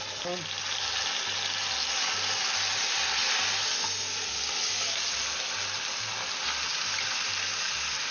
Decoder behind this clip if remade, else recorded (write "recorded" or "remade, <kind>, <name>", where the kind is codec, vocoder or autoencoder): recorded